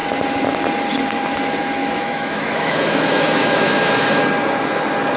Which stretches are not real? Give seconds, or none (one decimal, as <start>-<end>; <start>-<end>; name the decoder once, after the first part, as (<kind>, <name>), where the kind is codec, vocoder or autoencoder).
1.8-4.2 (autoencoder, DAC-VAE)